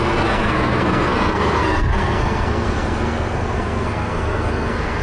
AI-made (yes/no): yes